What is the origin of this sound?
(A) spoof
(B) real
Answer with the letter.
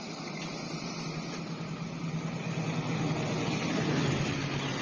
B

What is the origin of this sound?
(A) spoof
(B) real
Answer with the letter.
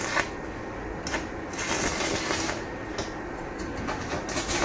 B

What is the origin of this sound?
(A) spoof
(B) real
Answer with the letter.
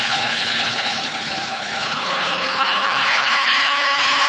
A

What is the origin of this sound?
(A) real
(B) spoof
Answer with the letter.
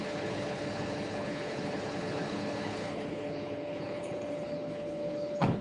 B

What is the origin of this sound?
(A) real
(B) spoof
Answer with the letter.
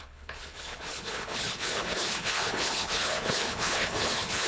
B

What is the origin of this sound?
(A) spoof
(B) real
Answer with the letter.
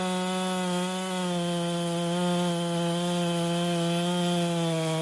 B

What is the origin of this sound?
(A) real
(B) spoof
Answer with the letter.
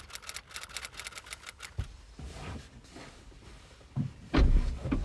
A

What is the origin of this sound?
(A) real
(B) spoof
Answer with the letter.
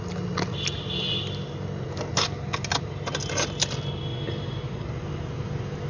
A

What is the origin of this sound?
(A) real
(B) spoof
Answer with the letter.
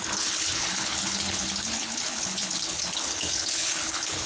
B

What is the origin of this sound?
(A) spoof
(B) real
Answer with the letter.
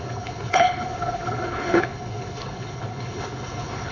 A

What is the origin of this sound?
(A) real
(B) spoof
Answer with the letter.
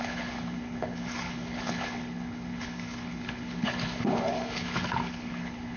B